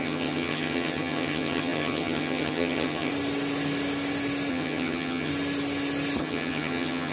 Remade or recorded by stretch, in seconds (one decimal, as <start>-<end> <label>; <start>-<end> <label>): 0.0-3.1 remade; 3.1-4.5 recorded; 4.5-5.3 remade; 5.3-6.2 recorded; 6.2-7.1 remade

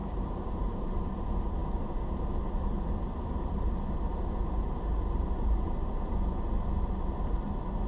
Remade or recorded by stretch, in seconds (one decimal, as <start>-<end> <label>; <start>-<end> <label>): 0.0-1.0 remade; 1.0-7.9 recorded

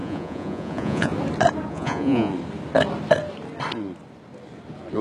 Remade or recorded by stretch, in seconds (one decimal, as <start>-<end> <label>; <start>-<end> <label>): 0.0-1.1 remade; 1.1-1.7 recorded; 1.7-2.3 remade; 2.3-5.0 recorded

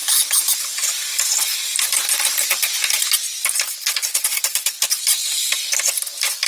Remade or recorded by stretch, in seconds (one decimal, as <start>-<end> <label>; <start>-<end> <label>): 0.0-6.5 recorded